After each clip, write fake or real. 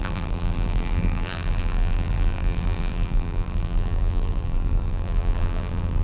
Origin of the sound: fake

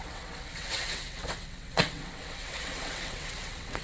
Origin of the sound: fake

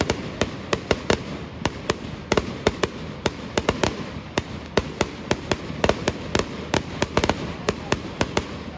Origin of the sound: real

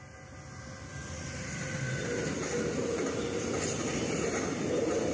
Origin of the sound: real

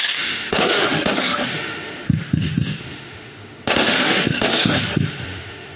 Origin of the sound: fake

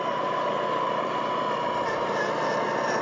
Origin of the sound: real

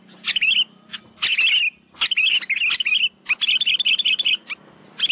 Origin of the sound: real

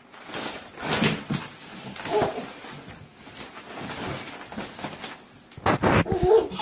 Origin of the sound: real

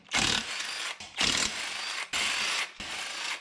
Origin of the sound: real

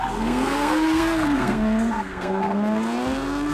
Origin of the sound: fake